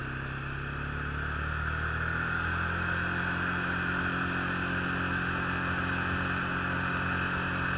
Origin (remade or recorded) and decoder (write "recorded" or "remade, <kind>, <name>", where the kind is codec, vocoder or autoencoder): recorded